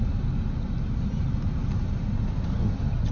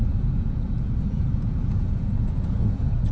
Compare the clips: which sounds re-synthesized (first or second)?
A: second